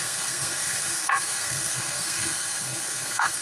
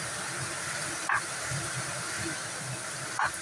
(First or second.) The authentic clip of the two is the second